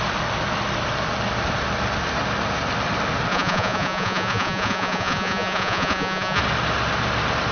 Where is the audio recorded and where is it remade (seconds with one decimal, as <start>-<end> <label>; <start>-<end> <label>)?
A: 0.0-3.3 recorded; 3.3-6.4 remade; 6.4-7.5 recorded

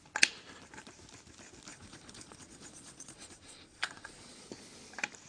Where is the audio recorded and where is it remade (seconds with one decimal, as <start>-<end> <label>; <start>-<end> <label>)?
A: 0.0-1.7 recorded; 1.7-4.5 remade; 4.5-5.3 recorded

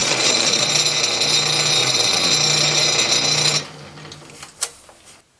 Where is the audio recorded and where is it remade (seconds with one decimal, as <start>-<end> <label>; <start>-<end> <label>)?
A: 0.0-0.7 remade; 0.7-1.8 recorded; 1.8-2.3 remade; 2.3-5.4 recorded

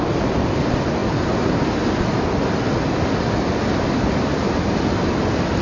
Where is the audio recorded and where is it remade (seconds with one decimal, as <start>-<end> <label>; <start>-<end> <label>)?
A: 0.0-5.6 recorded

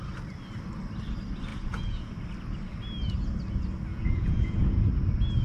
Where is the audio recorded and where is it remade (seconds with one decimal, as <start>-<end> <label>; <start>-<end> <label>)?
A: 0.0-1.5 recorded; 1.5-2.1 remade; 2.1-3.9 recorded; 3.9-4.8 remade; 4.8-5.4 recorded

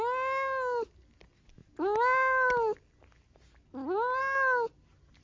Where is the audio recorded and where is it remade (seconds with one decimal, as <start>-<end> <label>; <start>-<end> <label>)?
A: 0.0-5.2 recorded

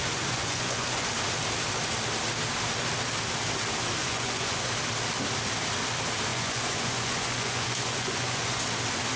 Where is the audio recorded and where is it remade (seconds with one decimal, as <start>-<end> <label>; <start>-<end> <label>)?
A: 0.0-1.1 remade; 1.1-4.0 recorded; 4.0-4.7 remade; 4.7-6.3 recorded; 6.3-8.6 remade; 8.6-9.2 recorded

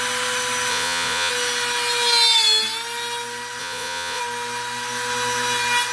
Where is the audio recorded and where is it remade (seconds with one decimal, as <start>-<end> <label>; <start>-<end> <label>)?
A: 0.0-0.7 recorded; 0.7-1.3 remade; 1.3-3.6 recorded; 3.6-4.2 remade; 4.2-5.9 recorded